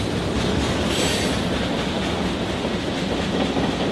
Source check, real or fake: real